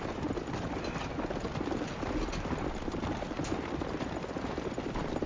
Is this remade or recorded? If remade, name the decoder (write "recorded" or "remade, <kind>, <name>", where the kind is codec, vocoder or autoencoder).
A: recorded